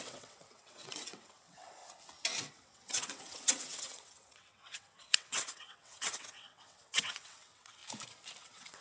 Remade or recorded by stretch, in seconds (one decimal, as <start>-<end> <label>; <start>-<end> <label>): 0.0-1.8 remade; 1.8-2.5 recorded; 2.5-7.8 remade; 7.8-8.4 recorded; 8.4-8.8 remade